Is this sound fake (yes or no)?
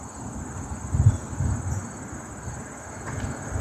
no